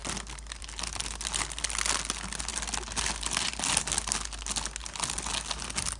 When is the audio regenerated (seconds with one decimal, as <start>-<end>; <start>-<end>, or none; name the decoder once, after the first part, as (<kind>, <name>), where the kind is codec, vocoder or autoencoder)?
none